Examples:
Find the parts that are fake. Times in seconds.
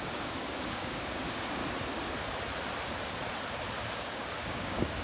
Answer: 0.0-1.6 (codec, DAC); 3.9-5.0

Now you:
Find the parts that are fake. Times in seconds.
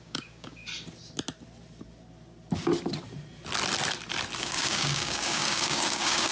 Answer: 0.0-0.6 (codec, DAC); 4.4-6.3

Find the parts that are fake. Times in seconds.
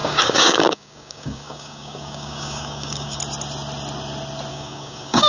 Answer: 0.0-3.2 (codec, DAC); 4.5-5.3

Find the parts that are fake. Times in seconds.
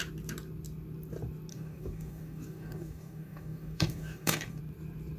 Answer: 1.5-4.6 (codec, DAC)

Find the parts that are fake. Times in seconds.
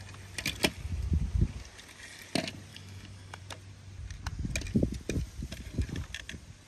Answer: 2.7-3.4 (codec, DAC)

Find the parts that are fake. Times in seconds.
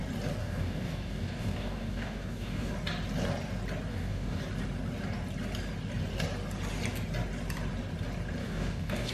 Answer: 0.4-2.7 (codec, DAC); 3.9-4.4; 8.4-9.1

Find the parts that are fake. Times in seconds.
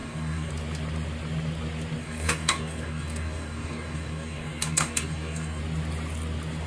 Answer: 0.0-0.5 (codec, DAC); 2.0-5.6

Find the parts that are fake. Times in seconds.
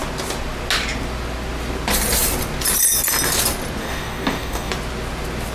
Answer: 3.8-4.7 (codec, DAC)